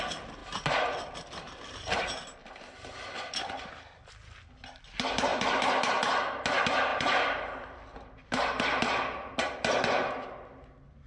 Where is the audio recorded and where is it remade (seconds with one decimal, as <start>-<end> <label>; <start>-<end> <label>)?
0.0-0.4 recorded; 0.4-1.0 remade; 1.0-2.4 recorded; 2.4-3.7 remade; 3.7-5.3 recorded; 5.3-5.9 remade; 5.9-6.9 recorded; 6.9-8.6 remade; 8.6-11.1 recorded